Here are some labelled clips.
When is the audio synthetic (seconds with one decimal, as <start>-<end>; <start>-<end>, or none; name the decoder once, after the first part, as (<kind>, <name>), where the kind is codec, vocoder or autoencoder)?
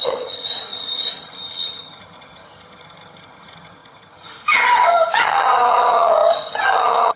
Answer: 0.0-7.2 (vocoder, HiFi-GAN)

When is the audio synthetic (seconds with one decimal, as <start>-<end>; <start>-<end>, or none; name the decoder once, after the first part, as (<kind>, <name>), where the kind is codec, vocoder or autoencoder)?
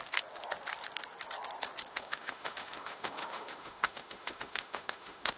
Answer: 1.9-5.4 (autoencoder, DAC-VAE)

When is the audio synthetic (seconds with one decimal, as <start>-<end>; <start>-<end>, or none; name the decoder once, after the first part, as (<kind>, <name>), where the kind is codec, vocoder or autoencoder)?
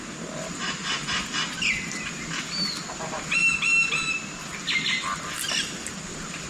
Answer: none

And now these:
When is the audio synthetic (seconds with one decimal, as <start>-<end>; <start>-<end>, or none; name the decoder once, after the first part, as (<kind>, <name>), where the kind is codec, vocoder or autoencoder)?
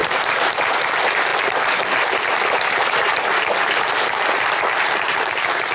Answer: 0.0-1.3 (vocoder, BigVGAN v2); 2.9-5.7